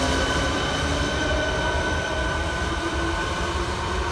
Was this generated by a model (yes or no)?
yes